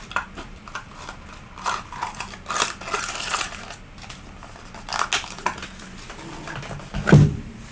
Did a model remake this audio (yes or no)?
no